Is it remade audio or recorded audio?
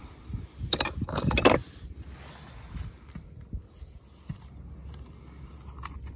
recorded